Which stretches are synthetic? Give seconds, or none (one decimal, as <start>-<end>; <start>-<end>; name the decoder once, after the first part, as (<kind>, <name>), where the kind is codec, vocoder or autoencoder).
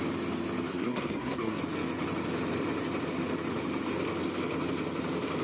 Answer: 0.7-1.6 (codec, SNAC)